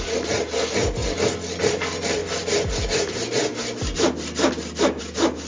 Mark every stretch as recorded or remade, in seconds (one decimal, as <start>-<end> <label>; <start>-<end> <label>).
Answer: 0.0-5.5 recorded